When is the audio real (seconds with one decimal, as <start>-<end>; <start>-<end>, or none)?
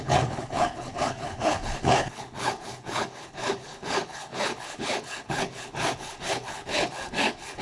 none